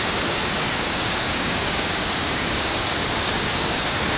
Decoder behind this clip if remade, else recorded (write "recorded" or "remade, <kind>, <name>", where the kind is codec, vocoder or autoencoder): remade, codec, DAC